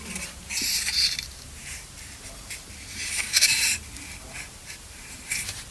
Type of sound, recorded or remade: remade